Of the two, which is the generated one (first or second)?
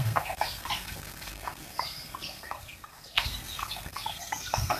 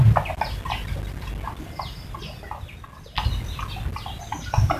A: first